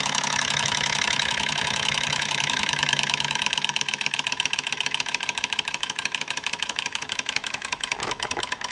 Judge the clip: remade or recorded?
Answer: remade